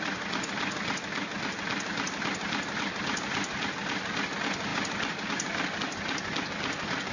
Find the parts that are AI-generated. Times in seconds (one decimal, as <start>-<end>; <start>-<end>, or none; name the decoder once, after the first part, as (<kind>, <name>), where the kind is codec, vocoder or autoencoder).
4.7-5.8 (vocoder, BigVGAN v2)